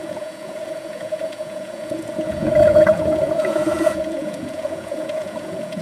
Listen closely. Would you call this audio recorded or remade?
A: remade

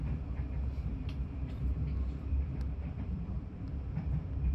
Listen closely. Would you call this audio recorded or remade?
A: remade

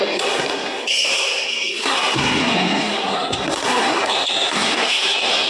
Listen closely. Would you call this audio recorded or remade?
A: remade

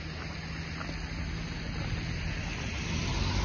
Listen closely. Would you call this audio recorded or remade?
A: recorded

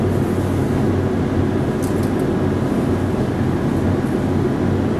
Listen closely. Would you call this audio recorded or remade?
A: recorded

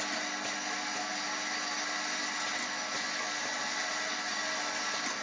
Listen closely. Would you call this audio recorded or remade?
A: recorded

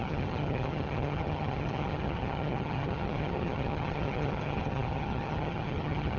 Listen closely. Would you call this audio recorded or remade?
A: remade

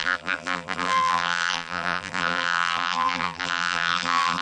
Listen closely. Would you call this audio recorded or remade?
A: remade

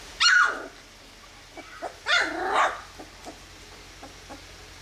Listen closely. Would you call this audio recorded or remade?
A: recorded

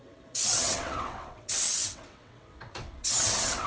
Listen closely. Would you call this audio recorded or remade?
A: remade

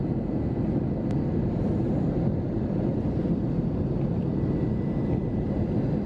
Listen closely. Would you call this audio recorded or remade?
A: remade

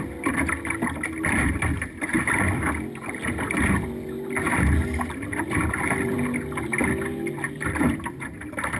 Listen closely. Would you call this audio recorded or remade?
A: recorded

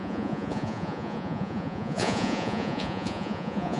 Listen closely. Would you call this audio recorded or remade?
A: remade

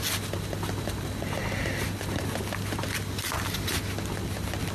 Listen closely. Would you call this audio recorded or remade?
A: recorded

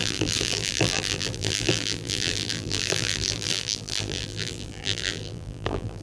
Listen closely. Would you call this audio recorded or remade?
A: remade